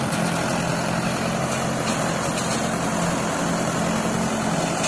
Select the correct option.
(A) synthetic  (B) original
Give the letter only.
B